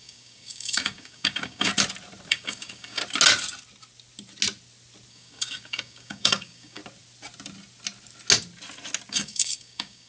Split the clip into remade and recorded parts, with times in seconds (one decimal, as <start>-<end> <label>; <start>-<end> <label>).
0.0-1.7 remade; 1.7-2.3 recorded; 2.3-3.0 remade; 3.0-5.1 recorded; 5.1-6.8 remade; 6.8-9.1 recorded; 9.1-10.1 remade